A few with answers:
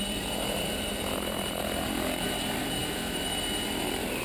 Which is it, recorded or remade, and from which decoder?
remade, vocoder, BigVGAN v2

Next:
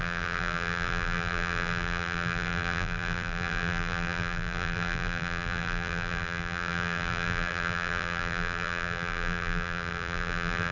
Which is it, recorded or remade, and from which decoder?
remade, vocoder, BigVGAN v2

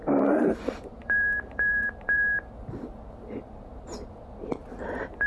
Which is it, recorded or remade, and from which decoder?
remade, vocoder, BigVGAN v2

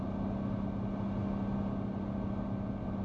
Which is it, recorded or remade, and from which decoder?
recorded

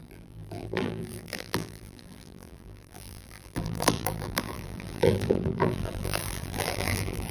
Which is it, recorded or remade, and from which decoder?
remade, vocoder, BigVGAN v2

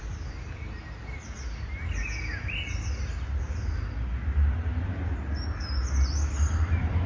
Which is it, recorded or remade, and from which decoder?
recorded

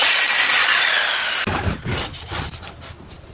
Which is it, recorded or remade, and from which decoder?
recorded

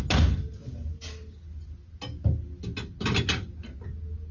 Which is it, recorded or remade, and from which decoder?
recorded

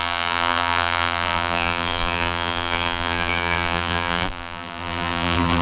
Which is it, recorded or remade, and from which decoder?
remade, vocoder, BigVGAN v2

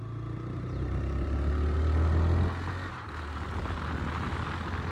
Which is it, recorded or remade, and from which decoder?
recorded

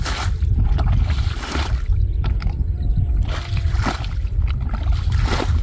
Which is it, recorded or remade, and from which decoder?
recorded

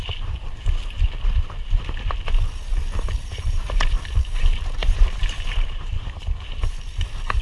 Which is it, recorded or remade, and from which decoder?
remade, vocoder, BigVGAN v2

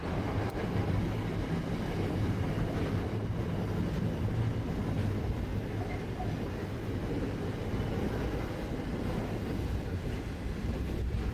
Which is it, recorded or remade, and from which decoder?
recorded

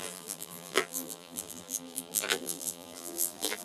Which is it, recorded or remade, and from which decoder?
remade, vocoder, BigVGAN v2